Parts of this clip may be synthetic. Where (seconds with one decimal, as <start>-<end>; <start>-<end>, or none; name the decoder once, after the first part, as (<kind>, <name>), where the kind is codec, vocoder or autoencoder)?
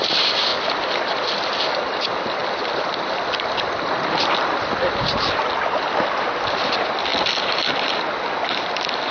0.0-7.1 (vocoder, BigVGAN v2); 8.6-9.1